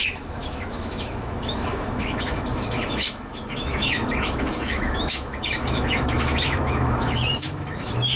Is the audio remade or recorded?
remade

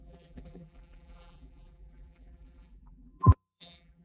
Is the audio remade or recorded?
remade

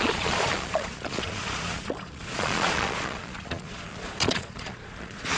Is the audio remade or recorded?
remade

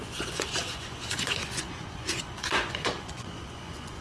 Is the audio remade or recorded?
remade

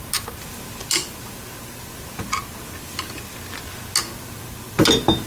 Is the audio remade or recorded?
recorded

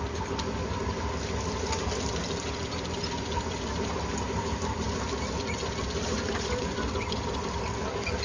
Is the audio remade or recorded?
recorded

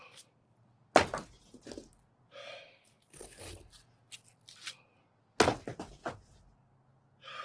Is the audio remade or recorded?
recorded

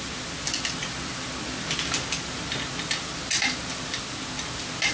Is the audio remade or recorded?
recorded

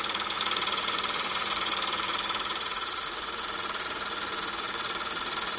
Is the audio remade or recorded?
remade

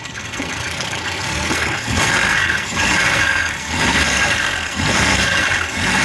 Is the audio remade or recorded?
remade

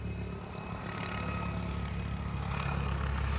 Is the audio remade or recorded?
recorded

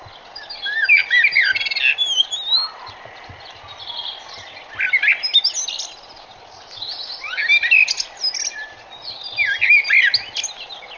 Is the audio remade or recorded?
recorded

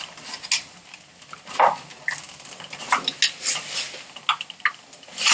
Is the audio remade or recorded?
recorded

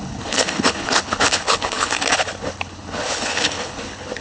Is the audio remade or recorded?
remade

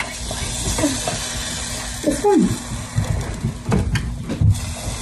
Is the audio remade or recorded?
recorded